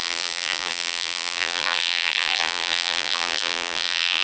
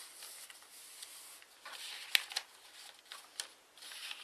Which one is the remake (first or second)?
first